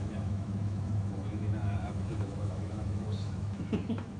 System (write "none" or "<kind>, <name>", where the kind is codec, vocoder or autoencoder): autoencoder, DAC-VAE